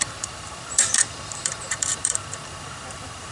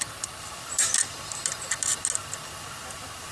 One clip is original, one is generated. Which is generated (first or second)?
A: first